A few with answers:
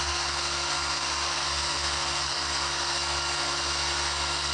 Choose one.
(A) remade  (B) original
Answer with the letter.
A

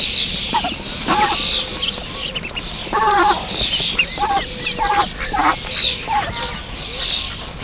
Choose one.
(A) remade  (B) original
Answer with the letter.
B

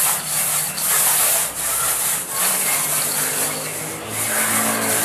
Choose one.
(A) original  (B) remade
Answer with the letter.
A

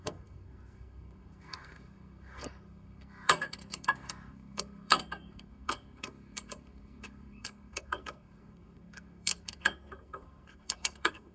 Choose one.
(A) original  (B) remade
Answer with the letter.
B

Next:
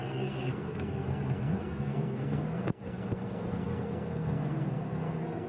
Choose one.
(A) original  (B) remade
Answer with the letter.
B